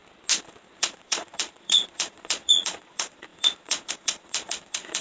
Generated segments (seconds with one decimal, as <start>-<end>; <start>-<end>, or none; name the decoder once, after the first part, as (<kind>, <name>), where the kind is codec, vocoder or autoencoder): 0.8-5.0 (vocoder, Vocos)